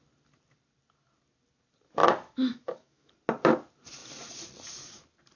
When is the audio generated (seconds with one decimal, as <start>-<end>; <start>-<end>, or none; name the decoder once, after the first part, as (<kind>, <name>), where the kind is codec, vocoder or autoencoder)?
2.0-3.1 (autoencoder, DAC-VAE)